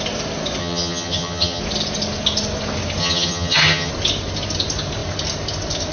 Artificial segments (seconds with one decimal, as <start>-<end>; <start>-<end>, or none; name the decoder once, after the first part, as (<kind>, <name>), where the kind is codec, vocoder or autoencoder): 0.6-1.6 (vocoder, HiFi-GAN); 3.0-3.9